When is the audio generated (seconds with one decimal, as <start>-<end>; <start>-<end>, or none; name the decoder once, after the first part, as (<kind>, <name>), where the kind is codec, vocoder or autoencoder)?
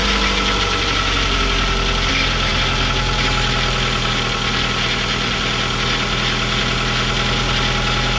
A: none